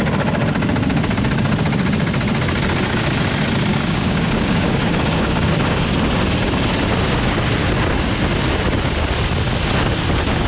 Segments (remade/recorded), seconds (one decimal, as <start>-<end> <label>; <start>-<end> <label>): 0.0-3.7 recorded; 3.7-5.7 remade; 5.7-10.5 recorded